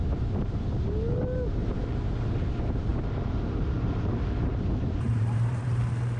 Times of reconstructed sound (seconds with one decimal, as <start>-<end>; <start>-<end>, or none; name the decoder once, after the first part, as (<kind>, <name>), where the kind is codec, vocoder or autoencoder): 1.6-2.3 (vocoder, BigVGAN v2); 2.9-5.8